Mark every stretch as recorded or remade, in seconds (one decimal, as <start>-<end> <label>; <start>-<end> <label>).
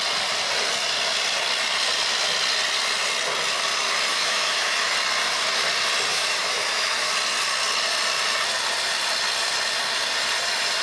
0.0-4.1 recorded; 4.1-4.9 remade; 4.9-6.1 recorded; 6.1-7.1 remade; 7.1-10.8 recorded